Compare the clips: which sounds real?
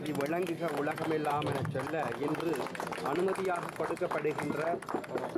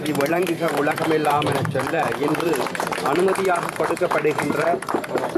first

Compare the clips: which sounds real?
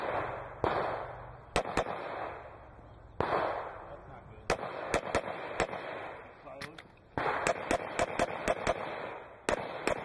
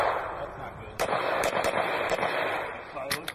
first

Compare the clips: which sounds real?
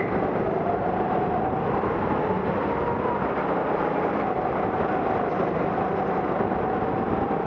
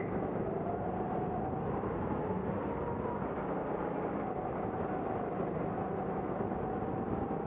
second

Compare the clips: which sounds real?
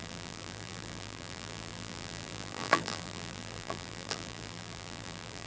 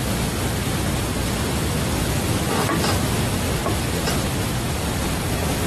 second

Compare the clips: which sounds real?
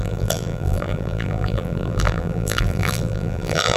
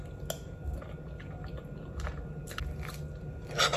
second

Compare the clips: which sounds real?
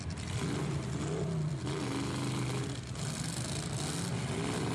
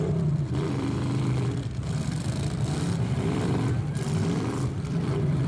first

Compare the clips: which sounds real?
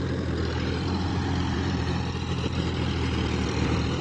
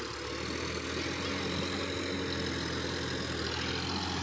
second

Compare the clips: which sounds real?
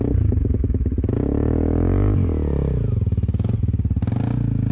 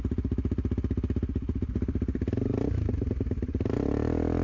first